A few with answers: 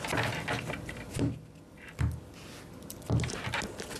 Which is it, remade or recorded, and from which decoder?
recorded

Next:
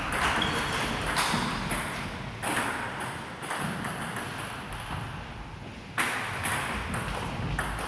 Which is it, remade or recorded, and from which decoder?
recorded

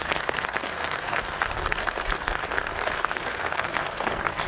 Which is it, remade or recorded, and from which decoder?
remade, codec, SNAC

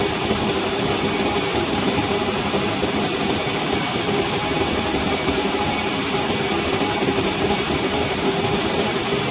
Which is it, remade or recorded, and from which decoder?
remade, vocoder, BigVGAN v2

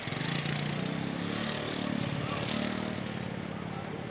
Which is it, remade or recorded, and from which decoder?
recorded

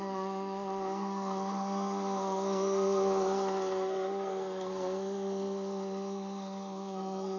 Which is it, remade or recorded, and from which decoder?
remade, codec, SNAC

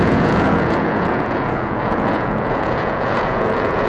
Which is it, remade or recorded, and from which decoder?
remade, vocoder, Vocos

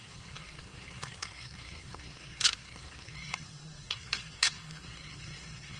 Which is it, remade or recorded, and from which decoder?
remade, codec, SNAC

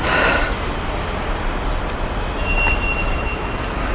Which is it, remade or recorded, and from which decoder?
recorded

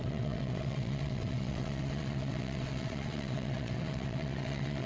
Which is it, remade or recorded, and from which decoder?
remade, vocoder, WaveNeXt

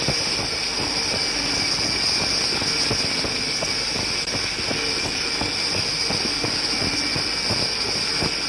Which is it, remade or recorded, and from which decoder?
recorded